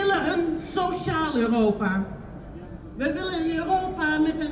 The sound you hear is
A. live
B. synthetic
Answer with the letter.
A